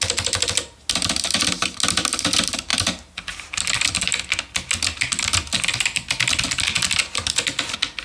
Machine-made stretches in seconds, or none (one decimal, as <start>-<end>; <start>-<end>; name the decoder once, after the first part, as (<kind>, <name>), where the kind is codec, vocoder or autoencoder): none